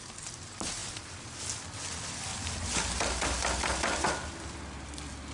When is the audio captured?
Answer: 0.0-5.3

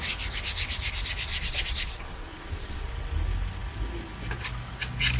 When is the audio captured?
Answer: 0.0-1.3; 2.9-5.2

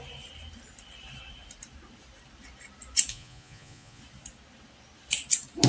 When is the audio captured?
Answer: 0.0-3.1; 4.0-5.7